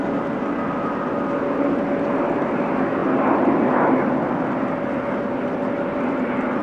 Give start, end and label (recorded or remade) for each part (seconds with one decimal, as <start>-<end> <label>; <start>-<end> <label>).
0.0-6.6 recorded